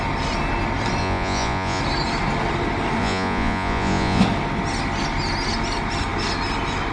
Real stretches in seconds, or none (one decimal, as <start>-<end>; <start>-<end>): 0.0-1.0; 1.8-3.0; 4.2-6.9